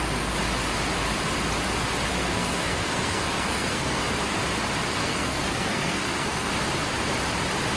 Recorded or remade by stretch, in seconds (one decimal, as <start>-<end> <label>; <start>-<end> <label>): 0.0-2.1 recorded; 2.1-4.0 remade; 4.0-4.9 recorded; 4.9-6.5 remade; 6.5-7.8 recorded